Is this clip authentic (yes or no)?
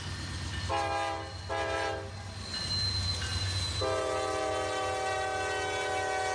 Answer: yes